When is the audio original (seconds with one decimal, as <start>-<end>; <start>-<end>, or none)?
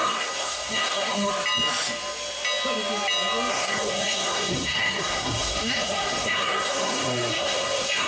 1.3-3.5